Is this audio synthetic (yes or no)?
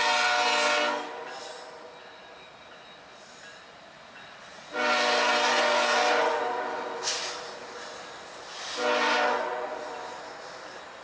no